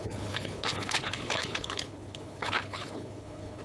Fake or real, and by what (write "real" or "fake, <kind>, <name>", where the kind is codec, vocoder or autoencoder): fake, codec, HILCodec